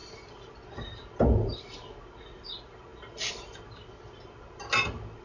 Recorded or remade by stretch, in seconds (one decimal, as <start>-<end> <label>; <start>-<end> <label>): 0.0-5.2 recorded